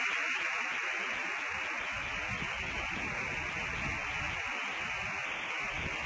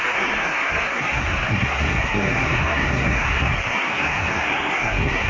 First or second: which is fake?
second